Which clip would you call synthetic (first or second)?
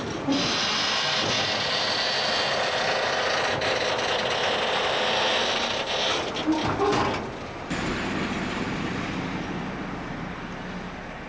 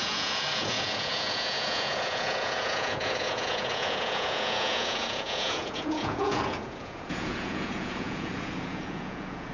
second